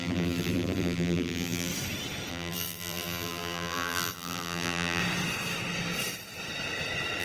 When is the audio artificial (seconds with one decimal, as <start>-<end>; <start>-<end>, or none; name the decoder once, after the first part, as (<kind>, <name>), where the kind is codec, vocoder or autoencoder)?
0.0-1.7 (vocoder, BigVGAN v2); 2.3-5.0